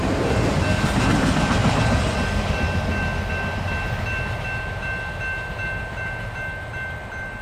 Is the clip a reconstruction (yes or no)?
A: no